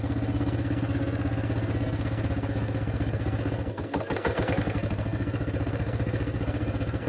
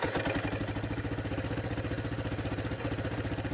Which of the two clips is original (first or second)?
second